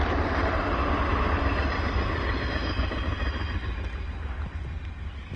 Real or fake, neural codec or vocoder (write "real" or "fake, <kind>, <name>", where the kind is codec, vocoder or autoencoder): real